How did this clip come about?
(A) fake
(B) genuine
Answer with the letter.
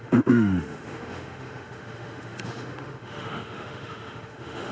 A